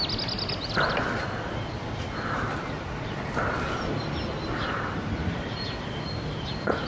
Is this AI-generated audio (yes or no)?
no